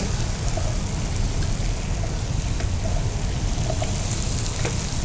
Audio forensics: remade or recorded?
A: recorded